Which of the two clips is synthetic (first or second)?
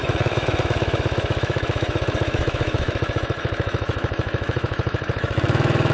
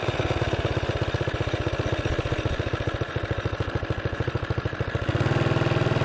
first